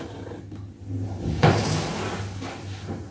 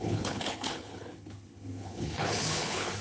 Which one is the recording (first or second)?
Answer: first